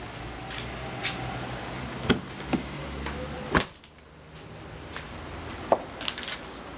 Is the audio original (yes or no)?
yes